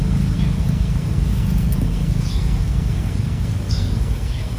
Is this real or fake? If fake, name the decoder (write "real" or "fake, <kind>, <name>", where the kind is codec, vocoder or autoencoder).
fake, codec, SNAC